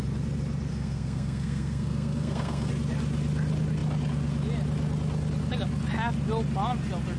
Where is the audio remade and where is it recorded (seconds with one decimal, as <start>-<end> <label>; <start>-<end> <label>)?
0.0-0.7 recorded; 0.7-2.7 remade; 2.7-7.2 recorded